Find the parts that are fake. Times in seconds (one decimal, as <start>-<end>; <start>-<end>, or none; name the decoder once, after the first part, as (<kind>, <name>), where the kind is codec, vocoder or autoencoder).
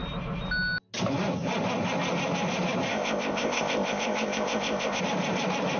2.9-5.0 (codec, ZipCodec)